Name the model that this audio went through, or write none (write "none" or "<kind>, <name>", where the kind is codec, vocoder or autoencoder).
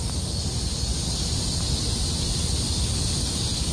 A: none